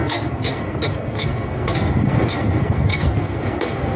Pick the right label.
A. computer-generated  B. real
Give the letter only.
A